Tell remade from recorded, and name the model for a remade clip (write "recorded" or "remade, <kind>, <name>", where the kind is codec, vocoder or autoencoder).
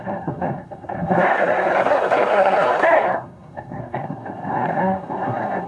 remade, codec, SNAC